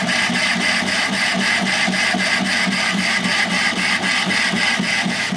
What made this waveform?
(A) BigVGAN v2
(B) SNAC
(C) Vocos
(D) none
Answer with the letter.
D